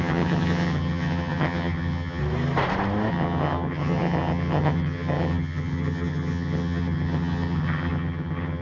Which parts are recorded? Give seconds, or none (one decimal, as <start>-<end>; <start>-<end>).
2.2-3.1

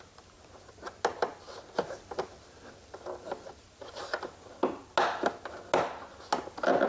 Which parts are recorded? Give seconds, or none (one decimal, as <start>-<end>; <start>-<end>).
0.0-6.9

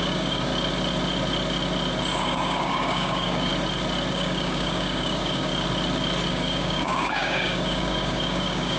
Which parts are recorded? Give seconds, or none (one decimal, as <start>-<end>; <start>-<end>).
0.5-2.2; 3.5-4.1; 5.5-6.3

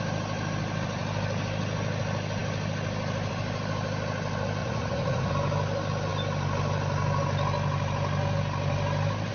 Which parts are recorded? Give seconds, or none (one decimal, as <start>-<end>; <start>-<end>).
0.0-4.6; 5.3-9.3

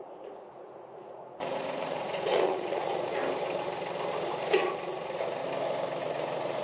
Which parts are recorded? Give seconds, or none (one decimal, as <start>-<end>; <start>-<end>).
3.2-4.3; 5.4-6.0